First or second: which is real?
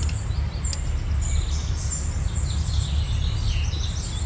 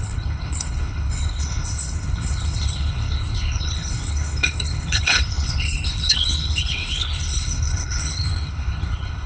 first